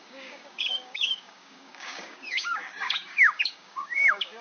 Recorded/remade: remade